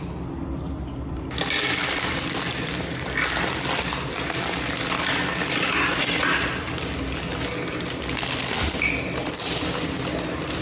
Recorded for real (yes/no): yes